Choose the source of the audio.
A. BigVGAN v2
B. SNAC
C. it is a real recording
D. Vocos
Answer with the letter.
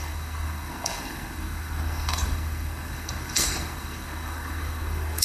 B